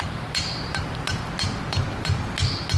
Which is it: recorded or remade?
recorded